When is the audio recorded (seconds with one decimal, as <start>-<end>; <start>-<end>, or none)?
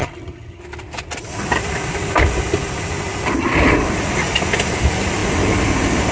0.6-6.1